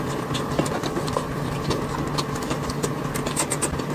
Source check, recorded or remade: recorded